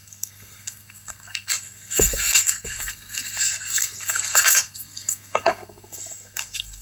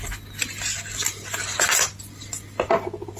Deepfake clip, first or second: first